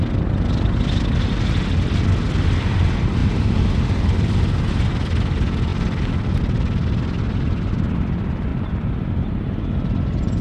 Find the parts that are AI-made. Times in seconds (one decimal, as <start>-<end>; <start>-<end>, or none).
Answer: 8.5-9.7